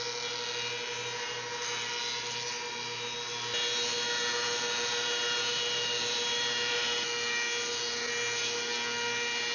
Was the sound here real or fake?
real